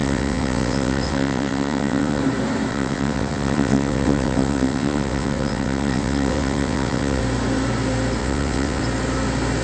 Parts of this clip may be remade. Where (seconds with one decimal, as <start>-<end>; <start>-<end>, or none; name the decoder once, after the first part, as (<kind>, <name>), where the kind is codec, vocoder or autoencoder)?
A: 0.0-2.2 (vocoder, WaveNeXt); 2.7-7.2; 8.2-8.8